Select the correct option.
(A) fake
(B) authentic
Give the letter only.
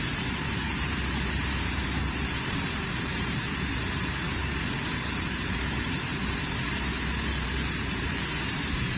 A